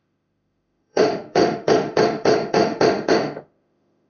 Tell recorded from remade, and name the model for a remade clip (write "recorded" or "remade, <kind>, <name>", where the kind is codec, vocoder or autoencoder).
remade, autoencoder, DAC-VAE